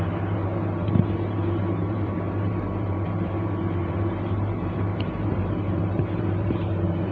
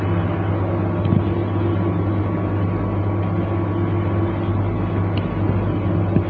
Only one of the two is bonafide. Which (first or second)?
second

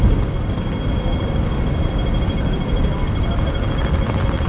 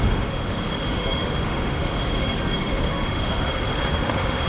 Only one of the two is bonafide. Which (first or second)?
first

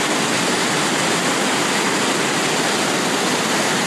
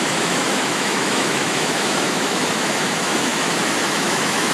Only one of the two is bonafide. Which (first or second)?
first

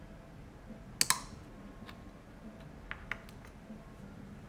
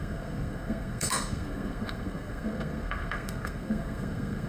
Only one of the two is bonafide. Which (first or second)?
first